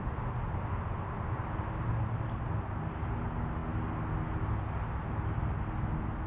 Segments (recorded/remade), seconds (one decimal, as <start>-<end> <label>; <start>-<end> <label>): 0.0-6.3 recorded